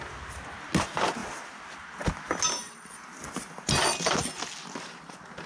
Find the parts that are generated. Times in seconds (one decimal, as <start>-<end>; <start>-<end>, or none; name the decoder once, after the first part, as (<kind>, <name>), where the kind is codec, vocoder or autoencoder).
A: none